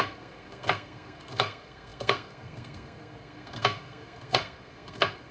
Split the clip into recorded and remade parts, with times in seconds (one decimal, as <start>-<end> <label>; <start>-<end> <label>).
0.0-5.3 remade